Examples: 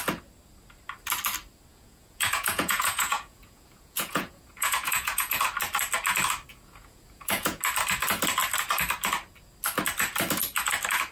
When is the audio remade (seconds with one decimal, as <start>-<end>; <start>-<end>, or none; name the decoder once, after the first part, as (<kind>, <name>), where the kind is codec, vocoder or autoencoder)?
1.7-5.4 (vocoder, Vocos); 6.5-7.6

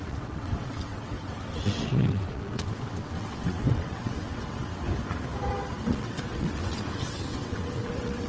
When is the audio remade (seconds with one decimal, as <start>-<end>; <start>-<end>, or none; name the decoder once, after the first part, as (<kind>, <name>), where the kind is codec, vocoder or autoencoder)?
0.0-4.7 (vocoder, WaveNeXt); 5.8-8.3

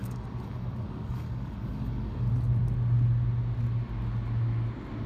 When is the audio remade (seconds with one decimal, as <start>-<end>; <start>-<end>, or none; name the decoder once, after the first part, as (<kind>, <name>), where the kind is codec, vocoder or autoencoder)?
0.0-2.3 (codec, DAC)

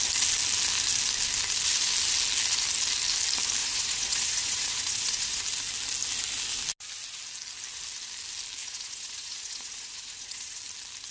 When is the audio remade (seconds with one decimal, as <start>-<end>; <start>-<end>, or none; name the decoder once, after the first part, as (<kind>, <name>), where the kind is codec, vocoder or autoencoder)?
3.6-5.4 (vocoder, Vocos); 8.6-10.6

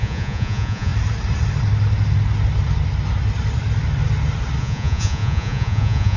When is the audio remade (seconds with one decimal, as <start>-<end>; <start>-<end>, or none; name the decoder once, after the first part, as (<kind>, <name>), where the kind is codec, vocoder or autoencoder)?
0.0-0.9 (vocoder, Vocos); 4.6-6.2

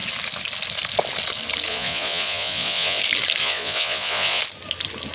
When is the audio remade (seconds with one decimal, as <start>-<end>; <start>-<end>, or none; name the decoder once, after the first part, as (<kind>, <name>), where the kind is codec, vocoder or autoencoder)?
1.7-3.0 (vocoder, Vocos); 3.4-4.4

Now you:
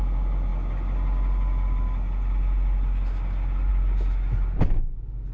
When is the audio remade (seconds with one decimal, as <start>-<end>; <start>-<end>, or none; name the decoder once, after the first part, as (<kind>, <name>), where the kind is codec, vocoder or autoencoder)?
none

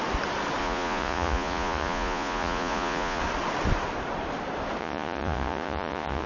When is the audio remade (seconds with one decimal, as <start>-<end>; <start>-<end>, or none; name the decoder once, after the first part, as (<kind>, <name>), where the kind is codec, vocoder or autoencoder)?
0.6-3.2 (vocoder, Vocos); 4.8-6.3